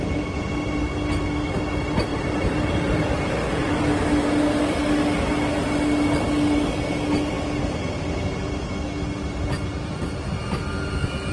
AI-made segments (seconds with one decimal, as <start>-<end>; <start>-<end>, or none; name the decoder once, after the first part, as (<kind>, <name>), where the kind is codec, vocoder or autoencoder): 2.1-3.7 (vocoder, BigVGAN v2)